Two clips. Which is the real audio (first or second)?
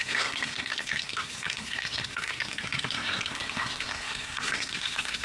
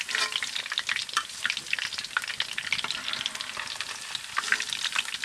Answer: second